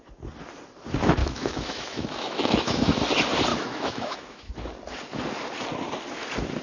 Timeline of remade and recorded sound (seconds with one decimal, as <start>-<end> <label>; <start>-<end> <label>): 0.0-1.2 recorded; 1.2-3.0 remade; 3.0-3.5 recorded; 3.5-4.5 remade; 4.5-6.6 recorded